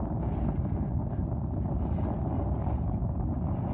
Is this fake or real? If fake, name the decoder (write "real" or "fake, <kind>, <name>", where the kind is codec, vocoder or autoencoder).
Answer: real